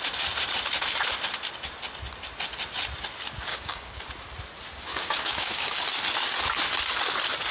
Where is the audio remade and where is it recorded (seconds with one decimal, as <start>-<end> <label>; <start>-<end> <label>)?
0.0-3.5 recorded; 3.5-4.0 remade; 4.0-4.9 recorded; 4.9-5.8 remade; 5.8-7.5 recorded